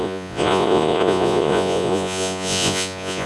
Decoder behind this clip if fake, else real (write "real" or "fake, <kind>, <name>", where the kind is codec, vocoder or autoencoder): fake, vocoder, Vocos